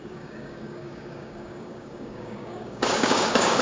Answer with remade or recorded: remade